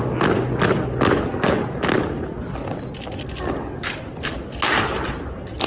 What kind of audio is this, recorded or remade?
recorded